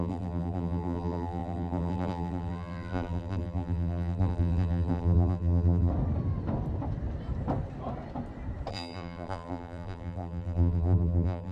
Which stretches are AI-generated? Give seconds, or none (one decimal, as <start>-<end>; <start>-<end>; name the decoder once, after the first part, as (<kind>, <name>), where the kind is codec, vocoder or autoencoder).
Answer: 0.0-5.9 (vocoder, BigVGAN v2); 8.7-11.5